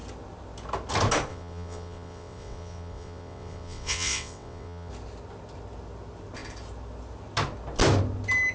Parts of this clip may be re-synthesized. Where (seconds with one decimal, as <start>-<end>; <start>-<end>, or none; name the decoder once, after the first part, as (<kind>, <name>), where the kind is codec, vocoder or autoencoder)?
1.3-4.9 (vocoder, WaveNeXt)